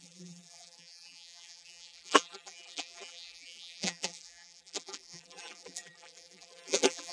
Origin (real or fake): fake